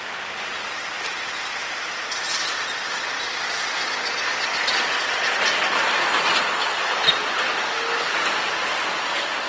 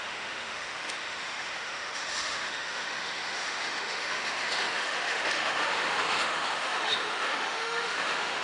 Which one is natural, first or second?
first